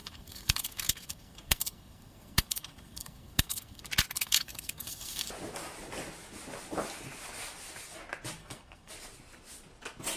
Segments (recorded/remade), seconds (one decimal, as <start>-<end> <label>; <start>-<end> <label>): 0.0-3.8 remade; 3.8-4.2 recorded; 4.2-5.3 remade; 5.3-8.4 recorded; 8.4-8.9 remade; 8.9-10.2 recorded